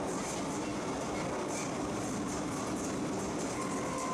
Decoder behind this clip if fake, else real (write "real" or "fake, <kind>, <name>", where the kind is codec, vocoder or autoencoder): real